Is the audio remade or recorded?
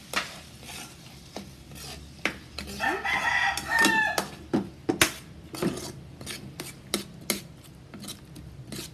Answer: recorded